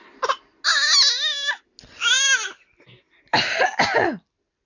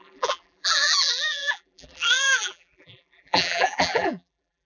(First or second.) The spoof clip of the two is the second